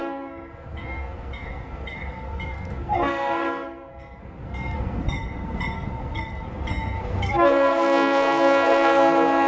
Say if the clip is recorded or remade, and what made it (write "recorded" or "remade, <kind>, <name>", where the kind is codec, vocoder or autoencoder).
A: remade, codec, SNAC